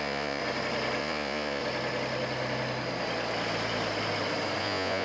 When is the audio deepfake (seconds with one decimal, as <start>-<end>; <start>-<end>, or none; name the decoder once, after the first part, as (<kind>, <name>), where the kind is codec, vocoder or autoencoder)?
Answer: 0.0-0.4 (vocoder, Vocos); 1.0-1.6; 4.6-5.0